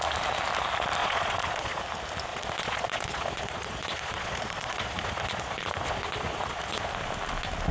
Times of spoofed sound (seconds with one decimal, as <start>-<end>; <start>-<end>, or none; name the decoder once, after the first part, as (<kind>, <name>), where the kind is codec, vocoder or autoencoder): 1.0-1.8 (vocoder, Vocos); 2.3-6.9